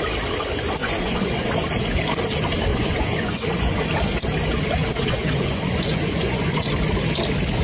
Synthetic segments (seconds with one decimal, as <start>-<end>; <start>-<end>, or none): 0.8-1.5; 2.7-3.9; 4.8-6.7